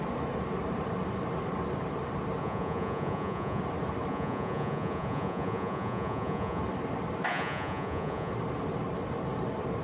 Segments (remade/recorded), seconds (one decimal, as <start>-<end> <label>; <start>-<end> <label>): 0.0-2.4 recorded; 2.4-3.6 remade; 3.6-4.1 recorded; 4.1-6.6 remade; 6.6-7.3 recorded; 7.3-8.3 remade; 8.3-9.8 recorded